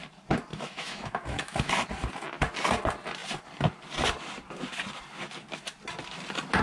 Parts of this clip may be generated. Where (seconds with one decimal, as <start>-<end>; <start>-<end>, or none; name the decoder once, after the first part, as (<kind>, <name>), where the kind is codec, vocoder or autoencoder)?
0.5-1.7 (autoencoder, DAC-VAE)